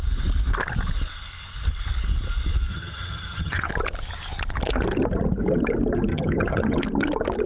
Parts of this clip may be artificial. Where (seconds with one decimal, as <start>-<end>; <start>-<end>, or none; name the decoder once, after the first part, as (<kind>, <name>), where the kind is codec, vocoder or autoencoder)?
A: 2.7-3.7 (vocoder, HiFi-GAN); 6.1-6.8